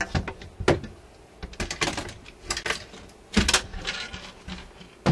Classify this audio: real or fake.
real